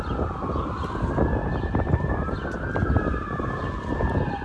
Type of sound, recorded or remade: recorded